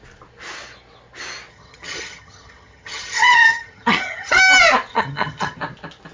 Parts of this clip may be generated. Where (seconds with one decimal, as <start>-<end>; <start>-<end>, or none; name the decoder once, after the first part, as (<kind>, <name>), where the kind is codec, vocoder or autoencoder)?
1.5-4.4 (vocoder, HiFi-GAN); 4.9-5.6